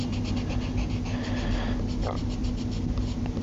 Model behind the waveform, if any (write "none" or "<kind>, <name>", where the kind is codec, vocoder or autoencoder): none